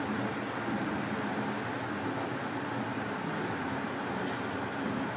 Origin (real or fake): real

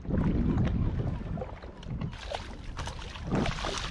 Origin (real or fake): real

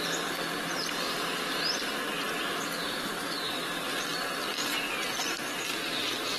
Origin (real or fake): real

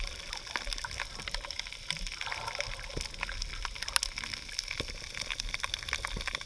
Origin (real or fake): real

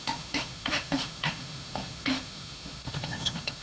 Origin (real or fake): fake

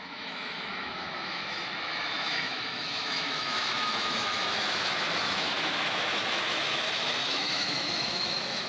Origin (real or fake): fake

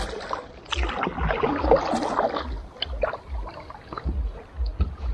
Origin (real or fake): real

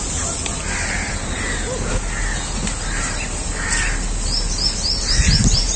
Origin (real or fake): real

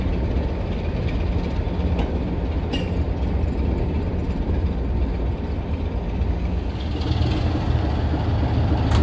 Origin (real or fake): real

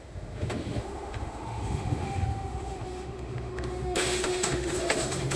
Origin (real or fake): fake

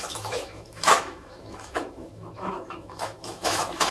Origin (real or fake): fake